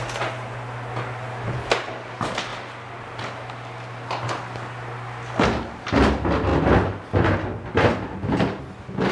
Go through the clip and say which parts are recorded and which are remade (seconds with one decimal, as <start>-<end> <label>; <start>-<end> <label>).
0.0-9.1 recorded